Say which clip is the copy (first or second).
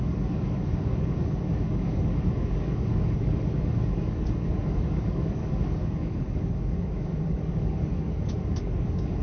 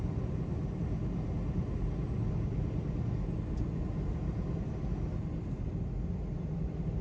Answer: first